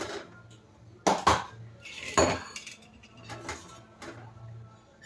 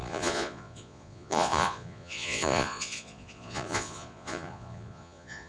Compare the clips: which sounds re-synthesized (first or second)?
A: second